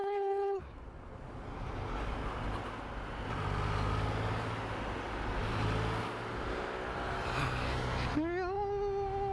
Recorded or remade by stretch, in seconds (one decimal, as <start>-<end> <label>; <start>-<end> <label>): 0.0-0.6 remade; 0.6-9.3 recorded